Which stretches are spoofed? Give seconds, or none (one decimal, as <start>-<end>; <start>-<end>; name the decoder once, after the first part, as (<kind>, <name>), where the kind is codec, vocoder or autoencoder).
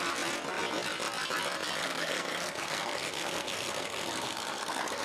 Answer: 1.8-5.0 (codec, SNAC)